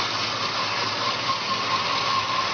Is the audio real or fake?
real